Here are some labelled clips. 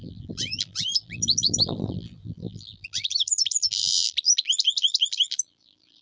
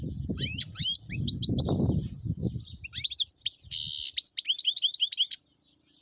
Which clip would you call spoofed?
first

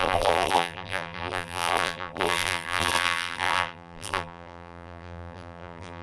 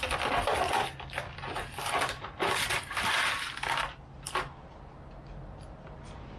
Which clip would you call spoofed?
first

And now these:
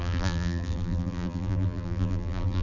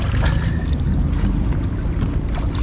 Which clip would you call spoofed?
first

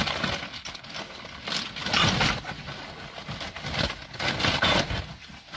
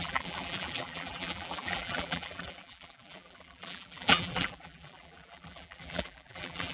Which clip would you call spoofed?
second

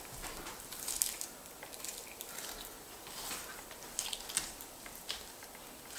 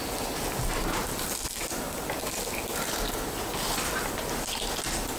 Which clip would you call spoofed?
first